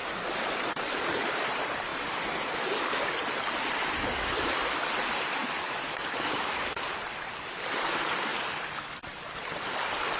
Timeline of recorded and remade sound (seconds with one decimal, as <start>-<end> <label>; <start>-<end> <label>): 0.0-0.6 recorded; 0.6-5.4 remade; 5.4-6.5 recorded; 6.5-8.3 remade; 8.3-9.1 recorded; 9.1-10.2 remade